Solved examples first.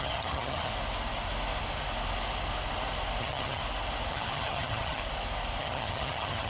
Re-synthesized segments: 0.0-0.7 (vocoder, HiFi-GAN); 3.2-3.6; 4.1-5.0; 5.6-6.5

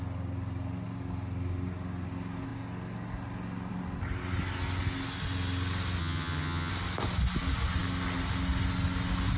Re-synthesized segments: 6.0-6.7 (vocoder, HiFi-GAN)

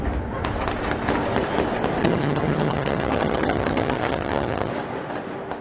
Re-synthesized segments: 2.0-4.7 (vocoder, HiFi-GAN)

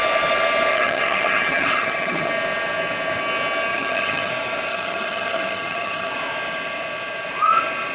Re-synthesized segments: 0.7-2.3 (vocoder, HiFi-GAN); 3.7-4.3; 4.7-6.1

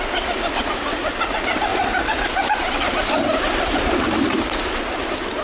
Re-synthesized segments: none

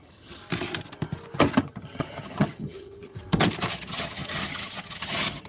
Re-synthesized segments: 0.0-0.4 (vocoder, HiFi-GAN); 1.6-3.1; 3.7-5.5

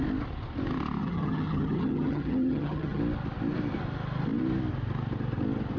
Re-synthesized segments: 1.0-3.0 (vocoder, HiFi-GAN)